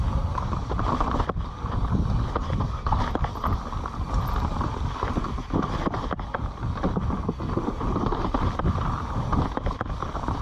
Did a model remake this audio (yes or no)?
no